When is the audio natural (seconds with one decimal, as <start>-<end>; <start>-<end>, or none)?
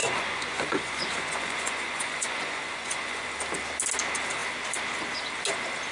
3.3-5.9